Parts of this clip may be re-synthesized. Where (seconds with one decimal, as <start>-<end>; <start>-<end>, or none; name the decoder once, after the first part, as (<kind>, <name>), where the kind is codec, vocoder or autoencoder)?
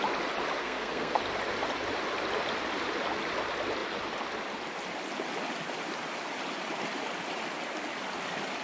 0.6-1.2 (codec, SNAC)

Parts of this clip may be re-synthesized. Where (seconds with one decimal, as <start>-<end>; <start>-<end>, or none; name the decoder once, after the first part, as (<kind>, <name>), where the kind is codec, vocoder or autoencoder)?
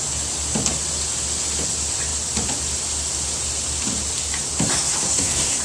4.7-5.6 (codec, SNAC)